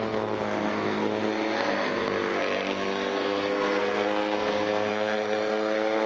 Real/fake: fake